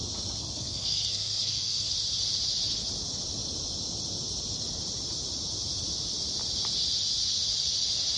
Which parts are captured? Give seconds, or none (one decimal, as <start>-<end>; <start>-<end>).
0.0-0.4; 1.9-8.2